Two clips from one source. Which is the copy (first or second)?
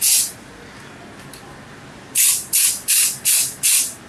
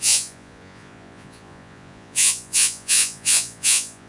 second